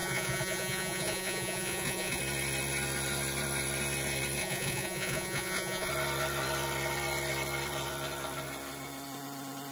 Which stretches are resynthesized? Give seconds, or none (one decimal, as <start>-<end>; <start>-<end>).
0.0-2.2; 4.4-5.9